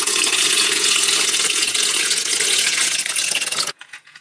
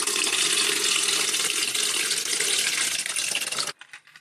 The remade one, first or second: first